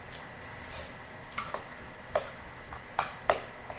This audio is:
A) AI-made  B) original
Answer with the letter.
B